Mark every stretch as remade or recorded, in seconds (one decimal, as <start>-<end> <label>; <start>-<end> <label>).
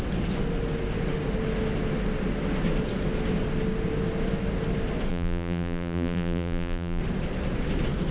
0.0-5.1 recorded; 5.1-7.0 remade; 7.0-8.1 recorded